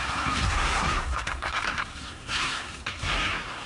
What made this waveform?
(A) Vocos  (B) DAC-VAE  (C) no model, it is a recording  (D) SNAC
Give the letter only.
D